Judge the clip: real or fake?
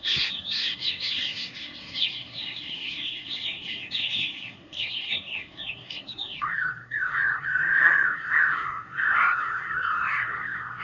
fake